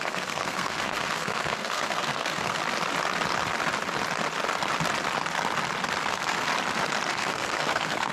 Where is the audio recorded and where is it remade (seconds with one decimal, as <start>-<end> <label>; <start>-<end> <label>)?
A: 0.0-2.6 remade; 2.6-6.1 recorded; 6.1-6.5 remade; 6.5-7.1 recorded; 7.1-8.1 remade